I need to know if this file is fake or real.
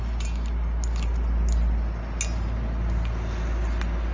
real